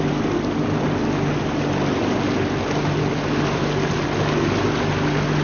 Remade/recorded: recorded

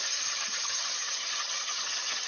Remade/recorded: remade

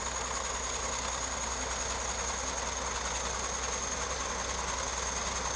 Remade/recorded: recorded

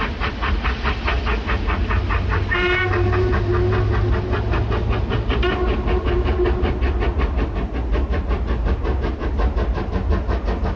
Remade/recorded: recorded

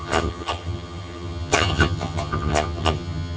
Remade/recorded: remade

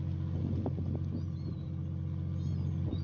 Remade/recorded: recorded